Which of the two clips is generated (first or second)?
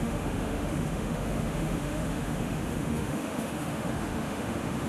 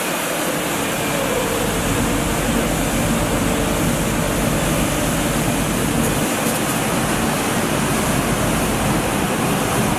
first